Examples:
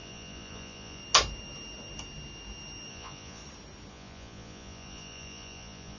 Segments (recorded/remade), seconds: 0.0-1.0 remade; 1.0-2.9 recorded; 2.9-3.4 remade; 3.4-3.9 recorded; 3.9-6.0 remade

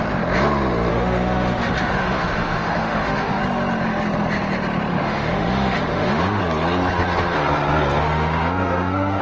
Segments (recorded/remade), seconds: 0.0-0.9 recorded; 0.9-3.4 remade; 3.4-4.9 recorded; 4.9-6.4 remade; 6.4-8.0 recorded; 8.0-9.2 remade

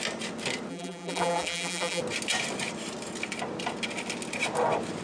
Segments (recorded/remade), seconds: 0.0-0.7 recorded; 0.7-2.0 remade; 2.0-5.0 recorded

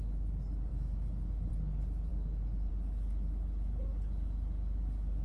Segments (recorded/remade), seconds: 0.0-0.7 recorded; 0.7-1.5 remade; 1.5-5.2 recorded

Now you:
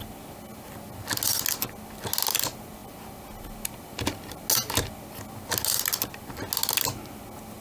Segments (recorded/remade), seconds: 0.0-7.6 recorded